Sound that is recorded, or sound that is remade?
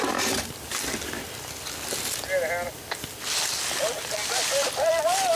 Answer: recorded